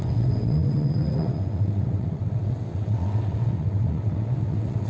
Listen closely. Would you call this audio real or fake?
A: fake